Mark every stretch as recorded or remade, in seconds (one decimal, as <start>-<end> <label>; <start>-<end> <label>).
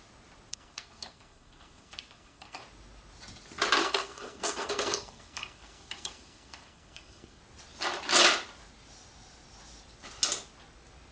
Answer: 0.0-0.5 recorded; 0.5-2.6 remade; 2.6-3.8 recorded; 3.8-7.4 remade; 7.4-11.1 recorded